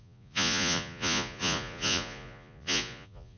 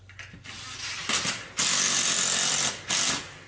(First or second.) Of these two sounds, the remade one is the first